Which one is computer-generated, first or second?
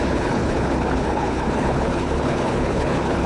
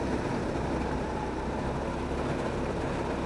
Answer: first